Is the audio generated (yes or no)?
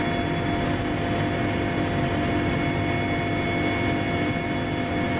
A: no